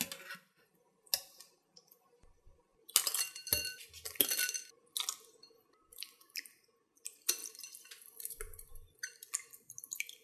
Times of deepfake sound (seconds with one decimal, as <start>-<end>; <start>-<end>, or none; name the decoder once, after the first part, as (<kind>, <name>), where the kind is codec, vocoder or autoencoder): none